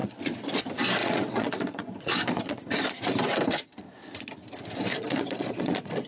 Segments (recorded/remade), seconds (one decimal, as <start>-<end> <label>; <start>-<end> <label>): 0.0-0.6 remade; 0.6-1.0 recorded; 1.0-2.6 remade; 2.6-4.9 recorded; 4.9-6.1 remade